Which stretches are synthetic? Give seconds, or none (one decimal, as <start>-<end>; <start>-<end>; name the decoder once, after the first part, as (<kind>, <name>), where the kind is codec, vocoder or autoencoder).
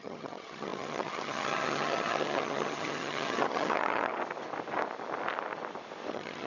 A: 0.0-4.1 (vocoder, HiFi-GAN); 6.1-6.5